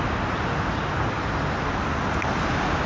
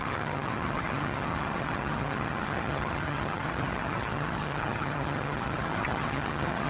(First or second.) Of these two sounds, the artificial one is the second